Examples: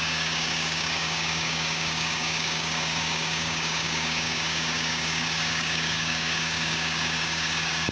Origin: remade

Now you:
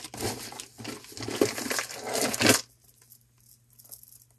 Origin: recorded